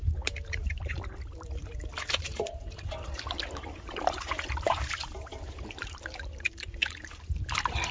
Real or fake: fake